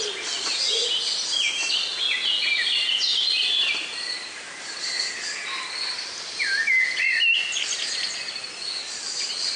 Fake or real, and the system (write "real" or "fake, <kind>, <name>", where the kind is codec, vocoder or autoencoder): real